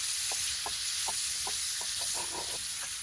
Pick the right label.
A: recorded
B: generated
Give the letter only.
B